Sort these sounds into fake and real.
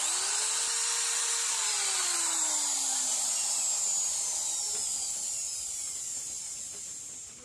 real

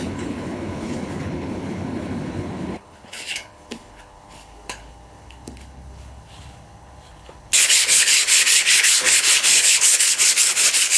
fake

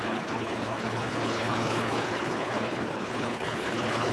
fake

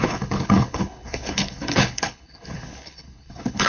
fake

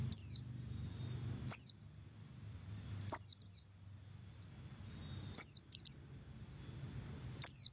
real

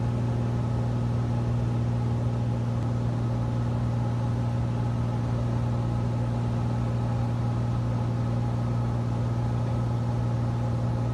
real